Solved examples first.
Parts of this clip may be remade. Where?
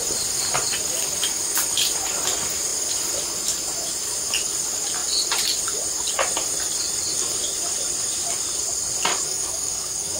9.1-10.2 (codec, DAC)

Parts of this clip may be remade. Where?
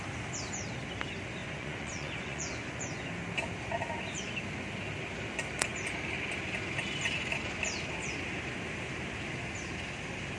1.4-3.1 (vocoder, Vocos)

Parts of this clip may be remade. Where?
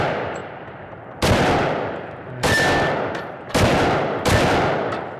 none